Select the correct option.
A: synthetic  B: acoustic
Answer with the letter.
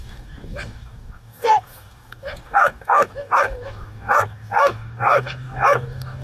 A